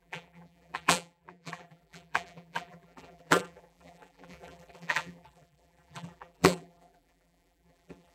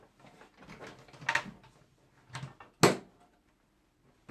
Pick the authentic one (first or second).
second